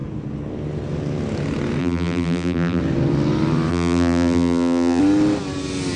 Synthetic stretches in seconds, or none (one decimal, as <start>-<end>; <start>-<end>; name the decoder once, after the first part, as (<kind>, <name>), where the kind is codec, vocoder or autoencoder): 1.8-2.8 (vocoder, BigVGAN v2); 3.7-5.0

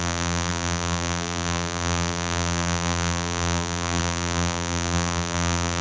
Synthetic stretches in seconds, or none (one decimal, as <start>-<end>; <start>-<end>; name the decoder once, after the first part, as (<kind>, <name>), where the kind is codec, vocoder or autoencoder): 0.0-5.8 (vocoder, BigVGAN v2)

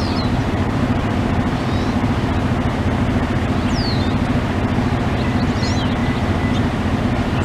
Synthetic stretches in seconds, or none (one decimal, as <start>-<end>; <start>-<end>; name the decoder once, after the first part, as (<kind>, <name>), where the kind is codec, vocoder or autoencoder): 0.4-2.3 (vocoder, BigVGAN v2)

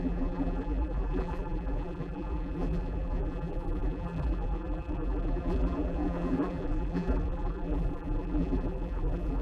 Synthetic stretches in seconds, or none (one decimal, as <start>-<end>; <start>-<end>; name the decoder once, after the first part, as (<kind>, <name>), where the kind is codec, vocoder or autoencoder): 0.0-9.4 (vocoder, BigVGAN v2)

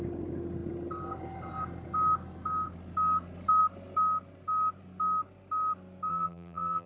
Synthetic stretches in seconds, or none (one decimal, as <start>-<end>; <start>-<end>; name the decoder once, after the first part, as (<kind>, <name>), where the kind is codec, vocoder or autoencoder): 6.1-6.9 (vocoder, BigVGAN v2)

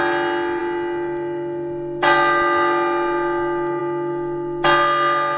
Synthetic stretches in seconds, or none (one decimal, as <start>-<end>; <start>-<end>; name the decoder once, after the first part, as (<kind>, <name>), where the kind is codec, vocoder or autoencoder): none

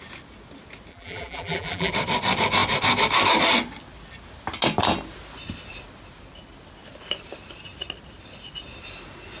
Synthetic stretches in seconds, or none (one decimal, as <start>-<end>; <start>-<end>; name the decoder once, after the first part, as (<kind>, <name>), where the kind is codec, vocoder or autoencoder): 0.9-1.9 (vocoder, BigVGAN v2)